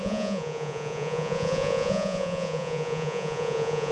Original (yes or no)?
no